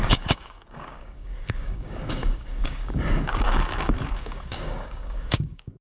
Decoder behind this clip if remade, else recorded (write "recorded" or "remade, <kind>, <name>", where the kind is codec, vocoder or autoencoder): remade, codec, DAC